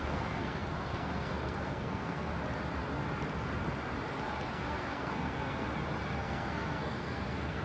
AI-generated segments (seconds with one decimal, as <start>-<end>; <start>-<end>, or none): 0.0-2.3; 4.5-5.7; 6.2-7.6